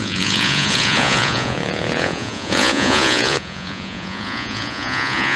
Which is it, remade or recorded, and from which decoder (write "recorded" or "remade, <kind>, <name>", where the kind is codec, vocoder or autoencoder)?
remade, vocoder, Vocos